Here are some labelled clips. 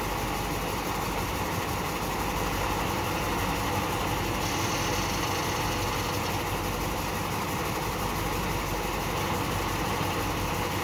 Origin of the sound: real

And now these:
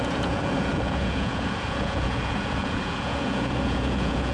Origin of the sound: fake